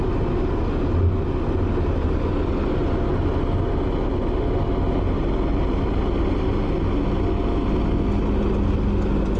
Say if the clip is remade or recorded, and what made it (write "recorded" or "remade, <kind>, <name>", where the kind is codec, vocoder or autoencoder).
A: recorded